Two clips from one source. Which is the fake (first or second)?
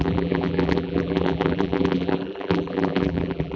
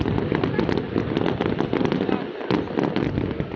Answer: first